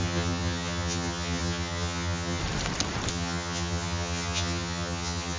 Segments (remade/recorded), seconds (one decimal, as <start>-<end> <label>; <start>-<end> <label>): 0.0-2.4 remade; 2.4-3.1 recorded; 3.1-5.4 remade